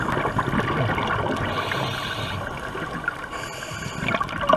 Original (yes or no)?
yes